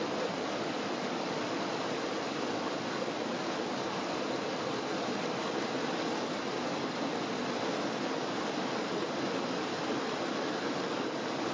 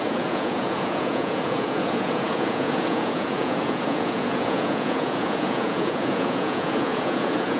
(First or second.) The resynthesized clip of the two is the second